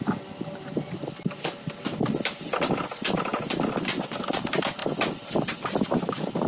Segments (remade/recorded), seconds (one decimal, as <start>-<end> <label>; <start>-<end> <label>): 0.0-6.5 recorded